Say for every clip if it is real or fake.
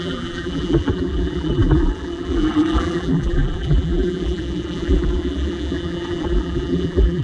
fake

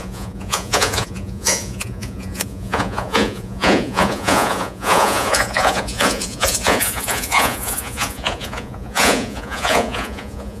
fake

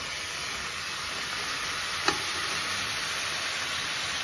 real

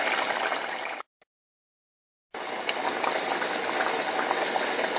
real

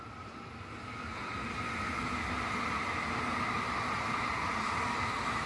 real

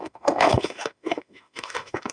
fake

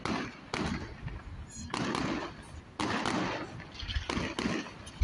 real